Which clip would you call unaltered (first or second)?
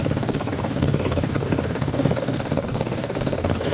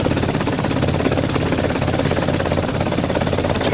second